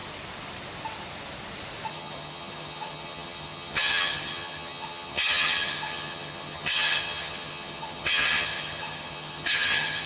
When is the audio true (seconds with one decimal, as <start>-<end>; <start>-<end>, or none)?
0.0-1.9